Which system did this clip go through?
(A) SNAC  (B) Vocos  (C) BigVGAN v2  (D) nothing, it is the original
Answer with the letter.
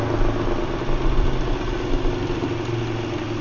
D